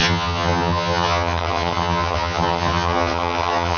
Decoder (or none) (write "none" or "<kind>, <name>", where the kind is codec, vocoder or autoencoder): vocoder, HiFi-GAN